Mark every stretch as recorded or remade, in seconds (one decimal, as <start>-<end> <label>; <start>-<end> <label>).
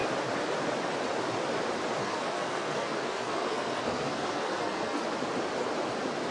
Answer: 0.0-2.0 recorded; 2.0-5.0 remade; 5.0-6.3 recorded